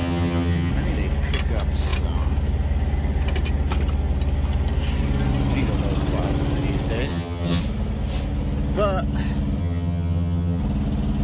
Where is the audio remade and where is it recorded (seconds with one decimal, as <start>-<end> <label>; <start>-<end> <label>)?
0.0-0.7 remade; 0.7-7.1 recorded; 7.1-7.6 remade; 7.6-9.6 recorded; 9.6-10.6 remade; 10.6-11.2 recorded